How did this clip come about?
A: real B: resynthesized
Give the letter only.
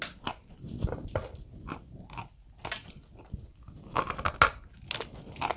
A